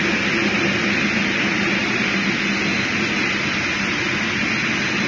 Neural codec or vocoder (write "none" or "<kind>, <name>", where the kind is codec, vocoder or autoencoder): none